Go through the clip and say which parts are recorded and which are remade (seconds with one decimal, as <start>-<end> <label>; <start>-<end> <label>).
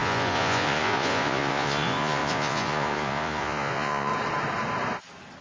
0.0-4.1 remade; 4.1-5.4 recorded